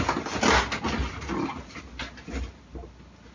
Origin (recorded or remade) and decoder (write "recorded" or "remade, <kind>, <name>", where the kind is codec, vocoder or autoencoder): recorded